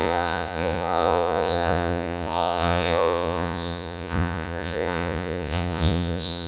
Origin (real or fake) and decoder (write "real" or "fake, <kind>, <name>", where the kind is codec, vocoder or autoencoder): fake, vocoder, Vocos